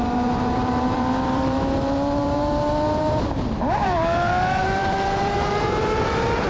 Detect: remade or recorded remade